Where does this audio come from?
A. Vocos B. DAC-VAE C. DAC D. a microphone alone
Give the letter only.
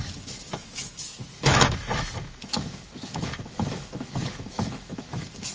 B